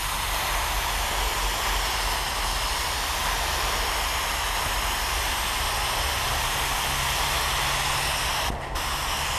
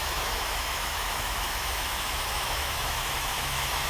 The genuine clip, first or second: first